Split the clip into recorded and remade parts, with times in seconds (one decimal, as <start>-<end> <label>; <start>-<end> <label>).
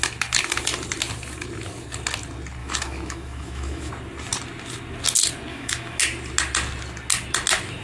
0.0-2.6 recorded; 2.6-3.9 remade; 3.9-5.5 recorded; 5.5-6.0 remade; 6.0-7.8 recorded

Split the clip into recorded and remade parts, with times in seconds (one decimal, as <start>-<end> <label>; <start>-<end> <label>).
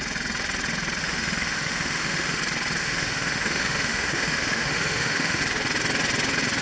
0.0-1.0 recorded; 1.0-2.4 remade; 2.4-2.8 recorded; 2.8-5.4 remade; 5.4-6.6 recorded